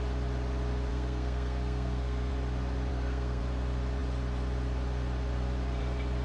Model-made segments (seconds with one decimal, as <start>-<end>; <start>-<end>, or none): 0.9-2.3; 2.9-3.4